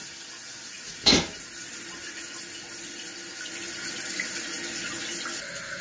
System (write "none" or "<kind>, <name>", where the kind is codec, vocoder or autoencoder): none